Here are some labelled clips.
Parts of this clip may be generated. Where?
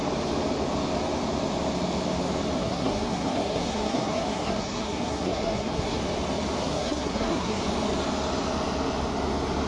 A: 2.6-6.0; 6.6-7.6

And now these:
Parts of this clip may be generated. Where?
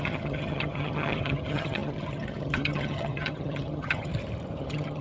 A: 0.0-4.1; 4.6-5.0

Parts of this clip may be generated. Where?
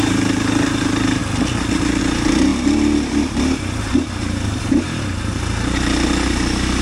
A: 0.0-1.2; 2.0-6.8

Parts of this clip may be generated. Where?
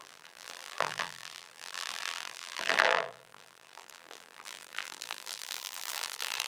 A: 0.0-6.5